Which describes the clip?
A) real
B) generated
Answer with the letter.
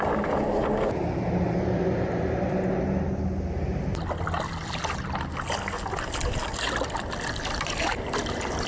A